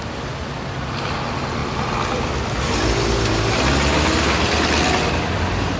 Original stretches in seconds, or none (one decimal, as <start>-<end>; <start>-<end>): 0.0-5.8